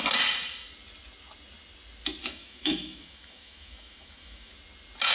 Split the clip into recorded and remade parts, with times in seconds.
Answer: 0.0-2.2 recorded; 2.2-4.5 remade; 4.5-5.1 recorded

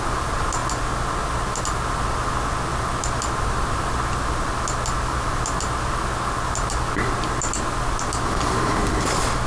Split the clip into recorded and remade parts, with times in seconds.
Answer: 0.0-9.5 recorded

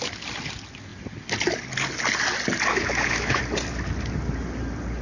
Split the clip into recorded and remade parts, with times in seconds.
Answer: 0.0-2.7 recorded; 2.7-3.4 remade; 3.4-5.0 recorded

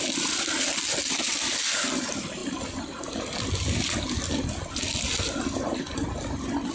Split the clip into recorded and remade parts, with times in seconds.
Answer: 0.0-6.7 recorded

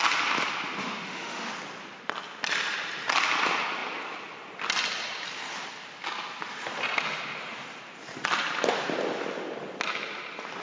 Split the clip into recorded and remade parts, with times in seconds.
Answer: 0.0-0.8 recorded; 0.8-1.5 remade; 1.5-10.6 recorded